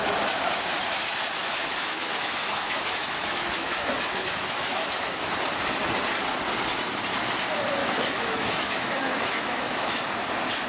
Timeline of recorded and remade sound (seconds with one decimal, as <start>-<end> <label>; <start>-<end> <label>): 0.0-1.4 recorded; 1.4-5.3 remade; 5.3-7.8 recorded; 7.8-10.0 remade; 10.0-10.7 recorded